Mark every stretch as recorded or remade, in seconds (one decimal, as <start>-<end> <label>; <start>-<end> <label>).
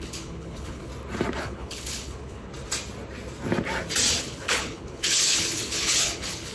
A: 0.0-0.9 remade; 0.9-1.4 recorded; 1.4-2.5 remade; 2.5-4.2 recorded; 4.2-6.5 remade